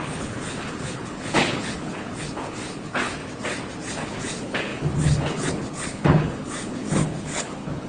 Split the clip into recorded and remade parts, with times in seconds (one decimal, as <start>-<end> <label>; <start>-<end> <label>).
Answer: 0.0-3.2 remade; 3.2-3.9 recorded; 3.9-7.9 remade